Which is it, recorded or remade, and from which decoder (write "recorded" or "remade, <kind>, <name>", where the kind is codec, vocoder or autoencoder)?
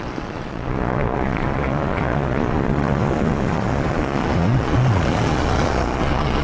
remade, vocoder, Vocos